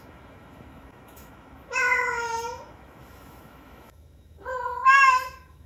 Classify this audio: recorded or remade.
remade